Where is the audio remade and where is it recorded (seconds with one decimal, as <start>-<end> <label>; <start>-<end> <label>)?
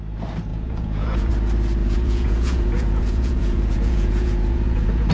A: 0.0-0.5 recorded; 0.5-1.3 remade; 1.3-1.8 recorded; 1.8-5.1 remade